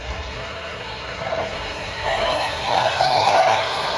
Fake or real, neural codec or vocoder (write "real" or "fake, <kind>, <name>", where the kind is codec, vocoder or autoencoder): fake, codec, SNAC